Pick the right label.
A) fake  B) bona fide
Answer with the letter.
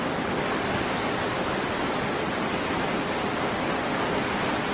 B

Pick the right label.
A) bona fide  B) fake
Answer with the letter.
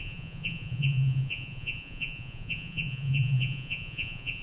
B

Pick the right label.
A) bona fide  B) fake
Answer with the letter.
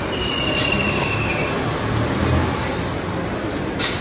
A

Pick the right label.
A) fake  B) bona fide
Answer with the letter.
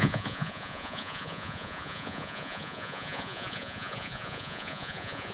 A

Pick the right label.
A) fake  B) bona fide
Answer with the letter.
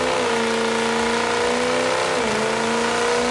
B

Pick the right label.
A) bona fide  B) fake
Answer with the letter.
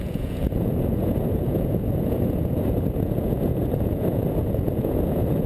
B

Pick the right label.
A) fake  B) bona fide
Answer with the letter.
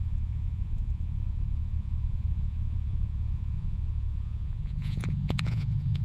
A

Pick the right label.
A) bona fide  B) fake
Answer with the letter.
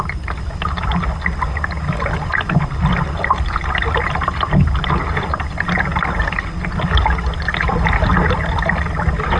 A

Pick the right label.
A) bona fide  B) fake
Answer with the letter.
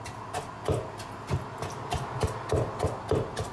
A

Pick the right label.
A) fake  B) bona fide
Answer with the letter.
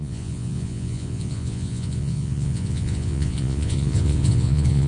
A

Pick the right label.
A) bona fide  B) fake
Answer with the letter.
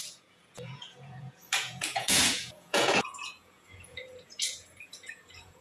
B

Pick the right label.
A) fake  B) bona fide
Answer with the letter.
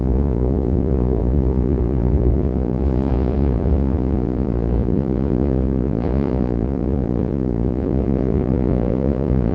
A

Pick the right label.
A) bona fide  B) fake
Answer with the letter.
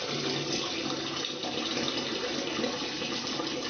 A